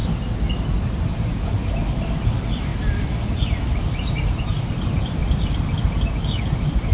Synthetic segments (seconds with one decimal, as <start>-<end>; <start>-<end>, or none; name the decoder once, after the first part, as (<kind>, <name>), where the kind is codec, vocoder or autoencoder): 1.7-2.7 (vocoder, BigVGAN v2); 3.8-5.2; 6.4-6.9